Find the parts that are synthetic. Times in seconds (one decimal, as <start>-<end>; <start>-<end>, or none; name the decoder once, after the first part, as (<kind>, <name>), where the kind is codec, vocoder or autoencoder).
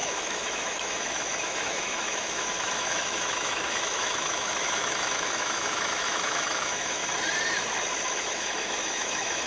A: 0.0-7.0 (autoencoder, DAC-VAE); 8.1-9.5